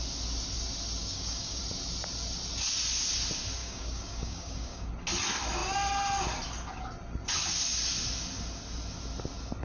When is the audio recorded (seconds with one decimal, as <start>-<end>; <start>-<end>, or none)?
0.0-1.0; 1.6-3.6; 4.9-9.6